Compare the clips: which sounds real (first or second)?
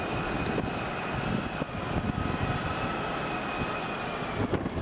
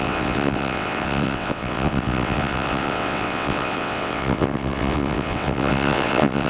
first